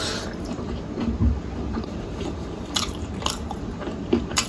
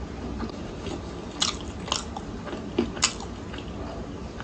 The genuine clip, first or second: second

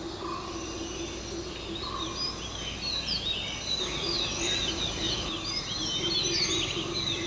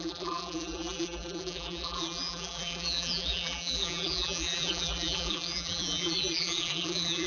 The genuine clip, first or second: first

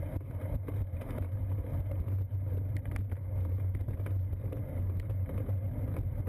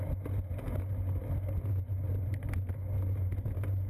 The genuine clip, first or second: second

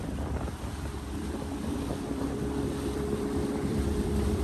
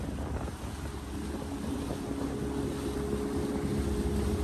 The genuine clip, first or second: second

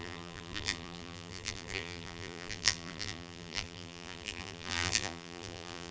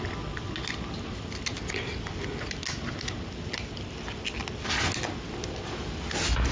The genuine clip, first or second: second